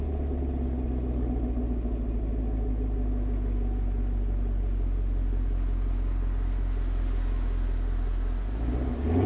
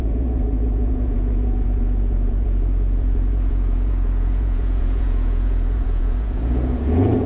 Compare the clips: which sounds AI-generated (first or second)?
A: second